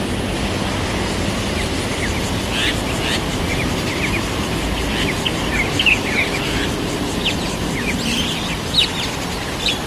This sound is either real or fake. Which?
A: real